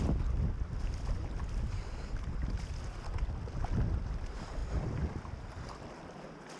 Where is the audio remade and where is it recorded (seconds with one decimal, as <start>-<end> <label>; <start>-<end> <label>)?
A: 0.0-6.6 recorded